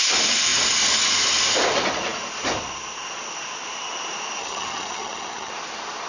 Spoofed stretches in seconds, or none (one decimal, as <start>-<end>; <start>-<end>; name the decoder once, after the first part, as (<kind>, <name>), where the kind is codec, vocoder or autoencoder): 4.4-5.5 (vocoder, HiFi-GAN)